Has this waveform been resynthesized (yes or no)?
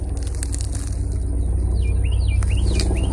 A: no